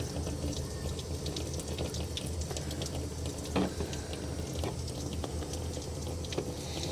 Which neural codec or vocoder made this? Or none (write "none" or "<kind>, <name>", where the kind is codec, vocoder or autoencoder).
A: none